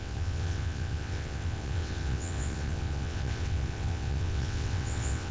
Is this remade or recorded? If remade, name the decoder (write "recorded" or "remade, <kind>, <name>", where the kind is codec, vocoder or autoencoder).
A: remade, vocoder, WaveNeXt